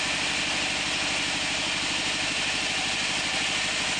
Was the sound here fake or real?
real